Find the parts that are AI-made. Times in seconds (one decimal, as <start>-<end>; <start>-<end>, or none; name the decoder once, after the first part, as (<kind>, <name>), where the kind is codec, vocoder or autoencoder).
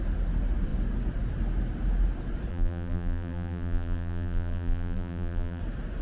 2.5-5.6 (vocoder, BigVGAN v2)